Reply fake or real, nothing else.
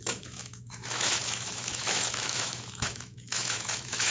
fake